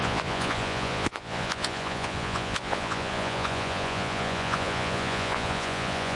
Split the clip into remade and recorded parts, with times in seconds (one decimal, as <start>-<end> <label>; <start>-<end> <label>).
0.0-6.2 remade

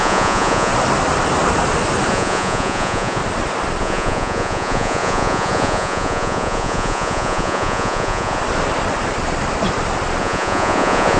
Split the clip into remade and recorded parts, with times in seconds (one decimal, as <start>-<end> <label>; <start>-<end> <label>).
0.0-0.7 remade; 0.7-2.1 recorded; 2.1-3.2 remade; 3.2-3.8 recorded; 3.8-8.4 remade; 8.4-10.2 recorded; 10.2-11.2 remade

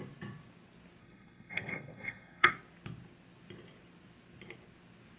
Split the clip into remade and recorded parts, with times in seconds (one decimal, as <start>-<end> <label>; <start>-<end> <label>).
0.0-1.0 recorded; 1.0-2.5 remade; 2.5-5.2 recorded